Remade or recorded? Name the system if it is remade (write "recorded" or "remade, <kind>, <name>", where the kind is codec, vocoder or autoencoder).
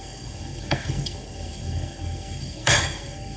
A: remade, codec, SNAC